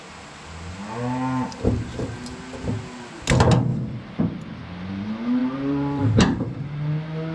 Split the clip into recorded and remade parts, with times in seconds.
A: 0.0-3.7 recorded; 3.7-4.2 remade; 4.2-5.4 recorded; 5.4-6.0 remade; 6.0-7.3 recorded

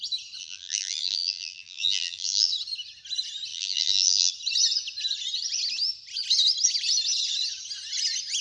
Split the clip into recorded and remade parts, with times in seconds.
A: 0.0-0.4 recorded; 0.4-2.5 remade; 2.5-3.5 recorded; 3.5-4.3 remade; 4.3-8.4 recorded

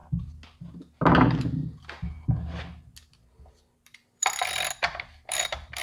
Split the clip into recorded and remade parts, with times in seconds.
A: 0.0-3.5 recorded; 3.5-5.8 remade

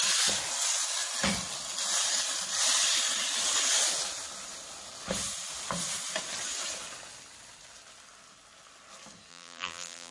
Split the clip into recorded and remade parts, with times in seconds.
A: 0.0-9.3 recorded; 9.3-10.1 remade

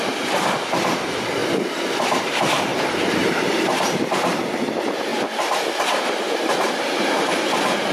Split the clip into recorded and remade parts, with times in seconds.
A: 0.0-1.4 remade; 1.4-2.2 recorded; 2.2-5.1 remade; 5.1-7.0 recorded; 7.0-7.9 remade